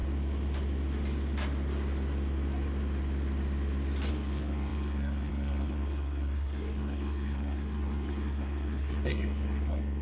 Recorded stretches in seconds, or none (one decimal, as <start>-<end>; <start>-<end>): 0.0-4.1